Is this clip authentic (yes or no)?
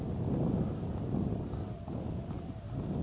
yes